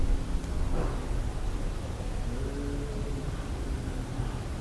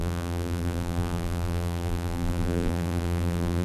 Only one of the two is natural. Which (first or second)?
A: first